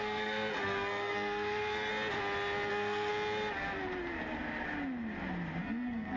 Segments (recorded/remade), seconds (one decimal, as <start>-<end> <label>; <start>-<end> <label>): 0.0-1.9 remade; 1.9-2.7 recorded; 2.7-3.1 remade; 3.1-5.6 recorded; 5.6-6.2 remade